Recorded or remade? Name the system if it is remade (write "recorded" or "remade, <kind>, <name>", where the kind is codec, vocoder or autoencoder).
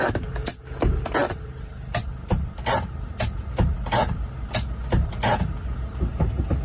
recorded